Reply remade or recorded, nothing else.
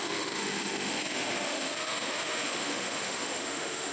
remade